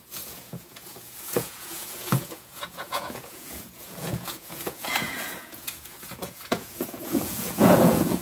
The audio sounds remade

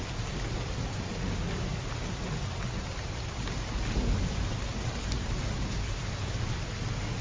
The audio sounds recorded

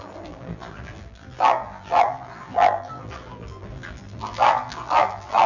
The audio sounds remade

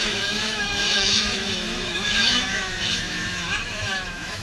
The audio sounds remade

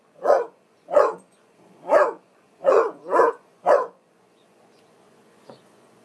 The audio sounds remade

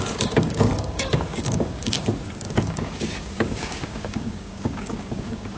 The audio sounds remade